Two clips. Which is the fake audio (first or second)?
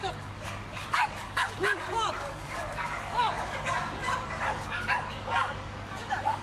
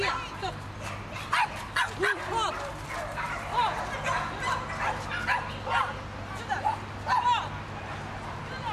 first